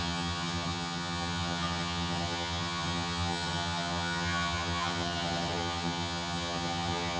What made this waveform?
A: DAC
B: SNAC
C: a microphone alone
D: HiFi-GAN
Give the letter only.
D